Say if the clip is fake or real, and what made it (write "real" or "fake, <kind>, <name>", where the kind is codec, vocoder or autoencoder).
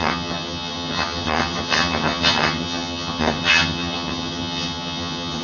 fake, vocoder, HiFi-GAN